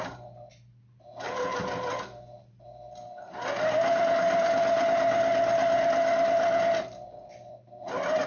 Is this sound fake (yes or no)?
no